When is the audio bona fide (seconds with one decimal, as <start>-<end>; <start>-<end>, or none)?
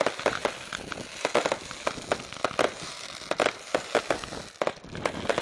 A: 0.0-0.4; 1.7-2.4; 4.0-5.4